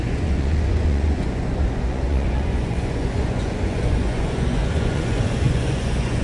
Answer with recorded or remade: remade